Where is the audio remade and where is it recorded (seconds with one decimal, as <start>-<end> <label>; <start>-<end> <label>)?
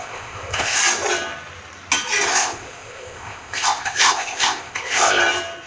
0.0-0.8 remade; 0.8-2.3 recorded; 2.3-5.2 remade; 5.2-5.7 recorded